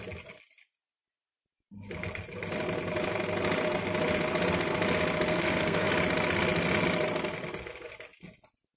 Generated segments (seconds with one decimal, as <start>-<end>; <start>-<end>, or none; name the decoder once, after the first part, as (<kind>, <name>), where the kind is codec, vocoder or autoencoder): 5.3-5.9 (codec, SNAC)